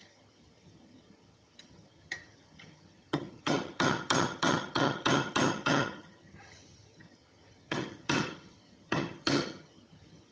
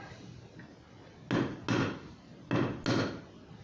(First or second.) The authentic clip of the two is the second